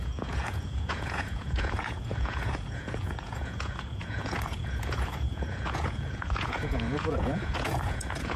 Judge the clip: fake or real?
fake